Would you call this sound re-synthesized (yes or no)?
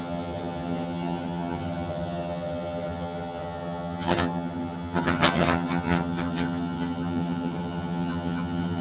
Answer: yes